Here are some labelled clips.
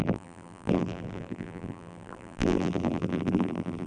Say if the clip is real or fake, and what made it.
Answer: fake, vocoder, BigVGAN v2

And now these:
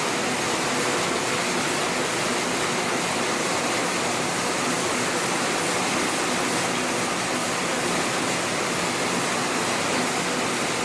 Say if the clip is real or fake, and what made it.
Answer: real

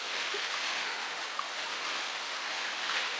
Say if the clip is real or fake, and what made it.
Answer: fake, autoencoder, DAC-VAE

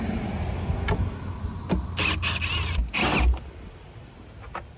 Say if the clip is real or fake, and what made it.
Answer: real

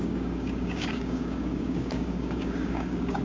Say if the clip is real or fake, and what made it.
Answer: fake, codec, DAC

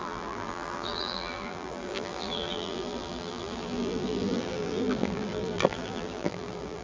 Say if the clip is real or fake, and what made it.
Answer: fake, vocoder, BigVGAN v2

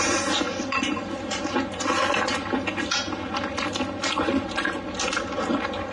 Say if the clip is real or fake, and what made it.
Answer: real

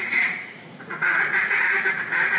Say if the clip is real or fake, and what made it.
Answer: fake, vocoder, Vocos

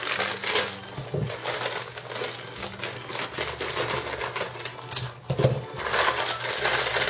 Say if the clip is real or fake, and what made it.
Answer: real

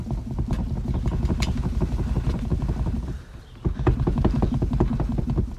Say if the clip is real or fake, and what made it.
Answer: real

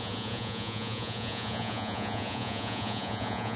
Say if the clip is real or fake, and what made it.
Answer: fake, vocoder, Vocos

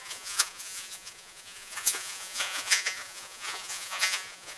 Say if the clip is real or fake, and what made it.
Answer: fake, vocoder, Vocos